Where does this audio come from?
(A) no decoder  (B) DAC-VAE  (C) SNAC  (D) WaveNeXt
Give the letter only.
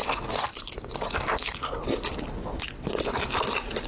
A